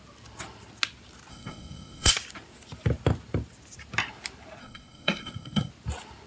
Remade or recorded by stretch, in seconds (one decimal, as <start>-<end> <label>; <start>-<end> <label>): 0.0-1.3 recorded; 1.3-2.1 remade; 2.1-4.6 recorded; 4.6-5.7 remade; 5.7-6.3 recorded